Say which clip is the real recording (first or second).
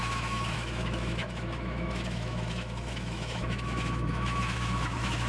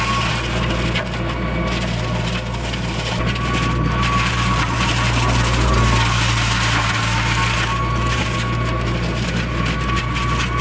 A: second